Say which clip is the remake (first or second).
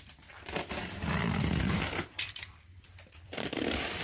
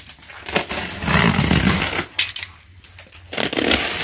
first